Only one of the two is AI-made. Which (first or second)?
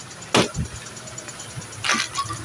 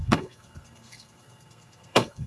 second